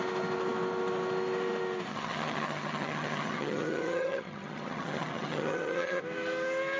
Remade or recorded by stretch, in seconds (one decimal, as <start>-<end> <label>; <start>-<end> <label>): 0.0-1.9 recorded; 1.9-6.0 remade; 6.0-6.8 recorded